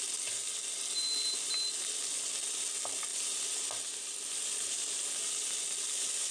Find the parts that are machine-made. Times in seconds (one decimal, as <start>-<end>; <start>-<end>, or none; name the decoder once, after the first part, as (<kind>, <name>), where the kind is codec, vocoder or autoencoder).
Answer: none